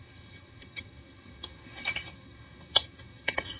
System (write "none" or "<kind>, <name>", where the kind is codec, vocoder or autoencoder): vocoder, HiFi-GAN